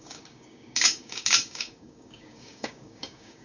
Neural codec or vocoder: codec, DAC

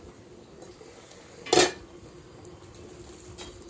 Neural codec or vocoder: none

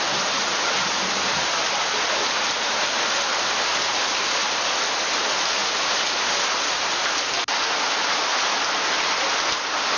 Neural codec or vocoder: none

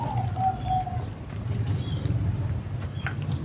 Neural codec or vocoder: none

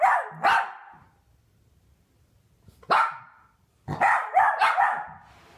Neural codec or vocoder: none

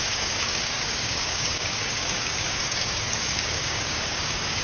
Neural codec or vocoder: codec, DAC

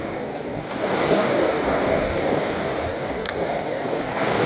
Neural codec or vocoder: codec, DAC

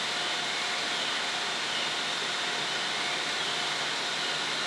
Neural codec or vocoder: none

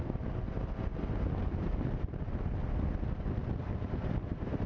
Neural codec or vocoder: none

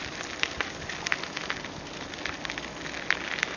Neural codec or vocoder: none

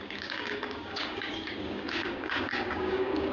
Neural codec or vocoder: codec, DAC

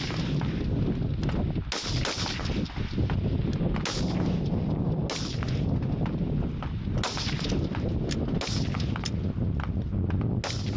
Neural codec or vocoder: none